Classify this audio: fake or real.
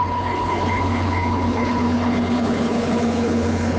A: fake